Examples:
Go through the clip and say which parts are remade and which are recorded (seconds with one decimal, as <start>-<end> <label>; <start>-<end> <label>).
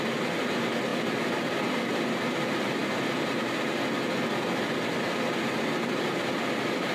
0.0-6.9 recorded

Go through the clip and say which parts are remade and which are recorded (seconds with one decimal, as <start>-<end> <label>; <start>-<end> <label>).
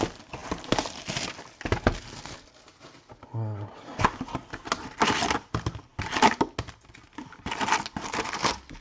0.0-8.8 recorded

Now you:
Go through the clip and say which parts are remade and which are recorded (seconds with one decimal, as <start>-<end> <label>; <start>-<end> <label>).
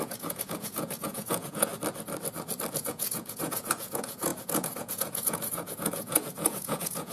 0.0-1.7 remade; 1.7-2.7 recorded; 2.7-7.1 remade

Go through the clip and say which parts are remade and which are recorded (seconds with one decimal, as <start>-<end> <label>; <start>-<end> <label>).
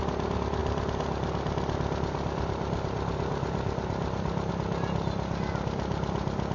0.0-6.5 recorded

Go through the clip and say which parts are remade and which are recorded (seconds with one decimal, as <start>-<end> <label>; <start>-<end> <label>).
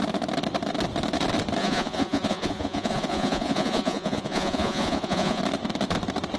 0.0-1.6 recorded; 1.6-5.4 remade; 5.4-6.4 recorded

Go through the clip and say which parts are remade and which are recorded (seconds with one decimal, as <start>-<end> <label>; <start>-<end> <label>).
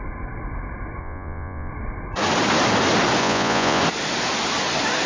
0.0-1.0 recorded; 1.0-1.7 remade; 1.7-3.2 recorded; 3.2-3.8 remade; 3.8-5.1 recorded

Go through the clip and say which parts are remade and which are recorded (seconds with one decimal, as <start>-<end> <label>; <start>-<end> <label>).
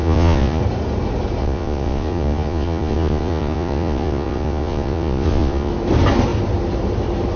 0.0-0.6 remade; 0.6-1.4 recorded; 1.4-5.7 remade; 5.7-7.4 recorded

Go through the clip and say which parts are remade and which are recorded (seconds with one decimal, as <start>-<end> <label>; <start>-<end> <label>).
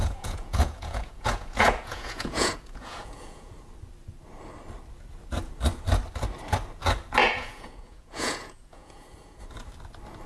0.0-3.5 remade; 3.5-7.2 recorded; 7.2-9.4 remade; 9.4-10.3 recorded